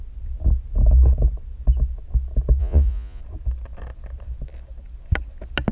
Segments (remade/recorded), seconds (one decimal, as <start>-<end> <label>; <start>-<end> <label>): 0.0-2.6 recorded; 2.6-3.2 remade; 3.2-5.7 recorded